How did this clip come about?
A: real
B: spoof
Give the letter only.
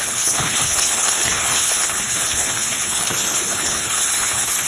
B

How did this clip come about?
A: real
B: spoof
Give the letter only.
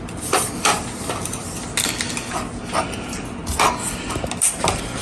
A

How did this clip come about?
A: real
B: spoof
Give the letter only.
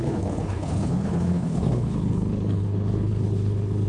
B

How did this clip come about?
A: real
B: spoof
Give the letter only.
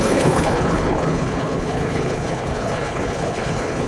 B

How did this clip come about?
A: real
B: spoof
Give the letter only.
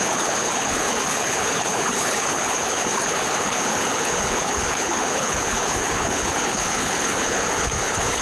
B